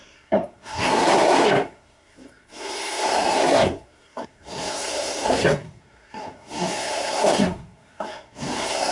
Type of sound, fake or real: fake